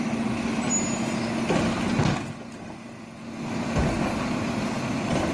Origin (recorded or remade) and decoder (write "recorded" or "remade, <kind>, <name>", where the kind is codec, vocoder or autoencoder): recorded